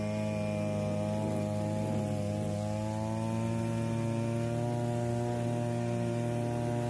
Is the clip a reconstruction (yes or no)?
no